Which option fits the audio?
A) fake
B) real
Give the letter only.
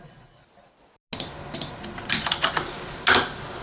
B